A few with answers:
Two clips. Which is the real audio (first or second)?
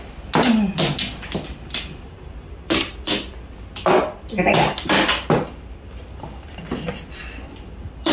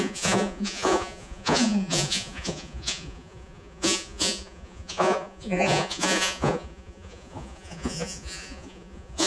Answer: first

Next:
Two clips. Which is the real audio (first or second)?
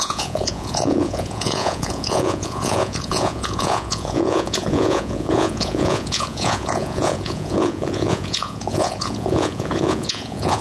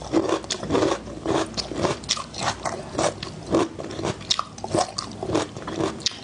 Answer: second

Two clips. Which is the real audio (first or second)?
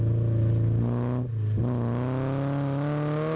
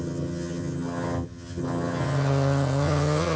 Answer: first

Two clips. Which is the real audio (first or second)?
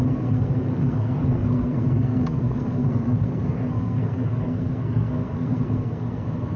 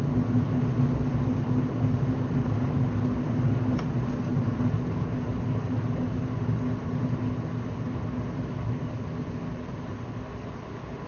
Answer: second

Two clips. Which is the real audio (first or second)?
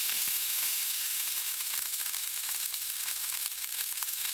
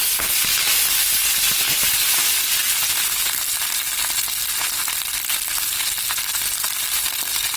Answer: second